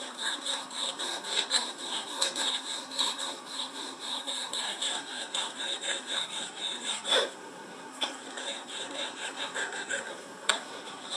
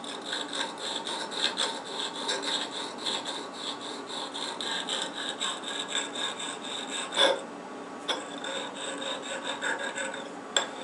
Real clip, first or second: second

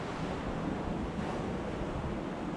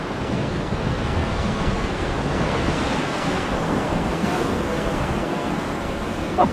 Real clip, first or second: first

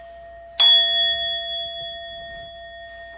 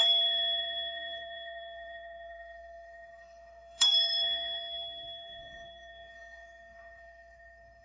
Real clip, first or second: first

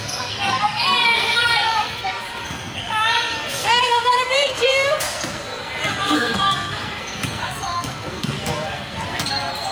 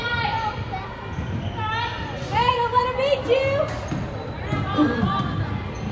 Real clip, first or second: second